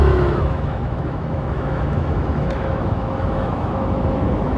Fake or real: fake